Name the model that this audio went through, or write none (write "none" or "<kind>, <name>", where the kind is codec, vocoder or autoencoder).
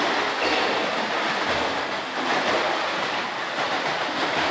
none